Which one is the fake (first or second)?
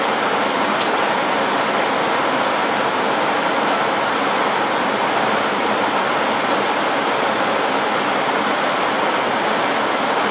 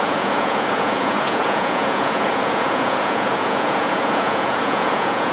second